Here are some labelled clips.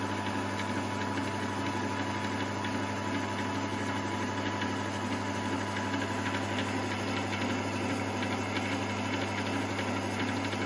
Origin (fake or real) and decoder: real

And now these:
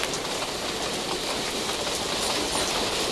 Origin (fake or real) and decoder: real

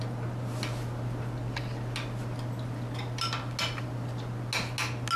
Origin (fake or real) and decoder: real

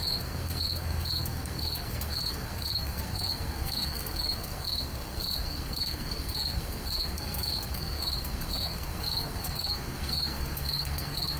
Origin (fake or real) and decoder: fake, codec, SNAC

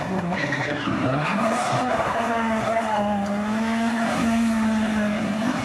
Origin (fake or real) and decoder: fake, codec, SNAC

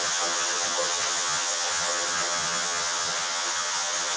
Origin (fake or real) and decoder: fake, vocoder, HiFi-GAN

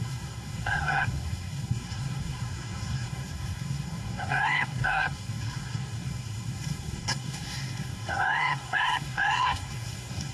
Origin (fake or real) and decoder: fake, codec, SNAC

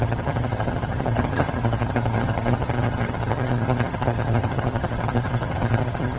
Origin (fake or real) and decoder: fake, vocoder, HiFi-GAN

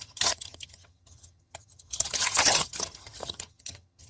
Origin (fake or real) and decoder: fake, vocoder, HiFi-GAN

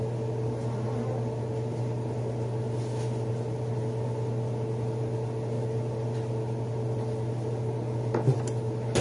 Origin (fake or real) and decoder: real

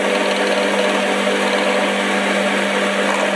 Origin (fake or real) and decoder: real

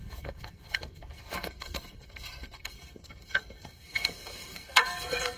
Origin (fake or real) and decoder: fake, codec, SNAC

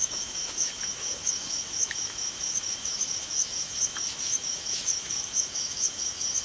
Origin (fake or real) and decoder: fake, autoencoder, DAC-VAE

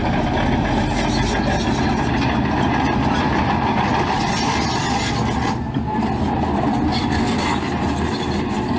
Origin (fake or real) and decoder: real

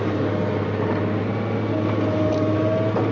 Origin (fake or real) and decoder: real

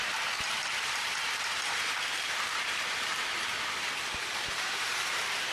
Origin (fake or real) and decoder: fake, vocoder, BigVGAN v2